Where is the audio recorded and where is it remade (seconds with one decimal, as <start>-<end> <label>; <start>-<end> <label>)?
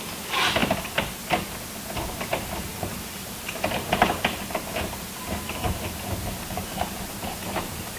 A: 0.0-2.7 recorded; 2.7-7.1 remade; 7.1-8.0 recorded